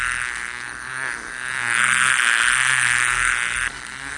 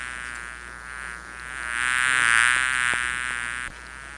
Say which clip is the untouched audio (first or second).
second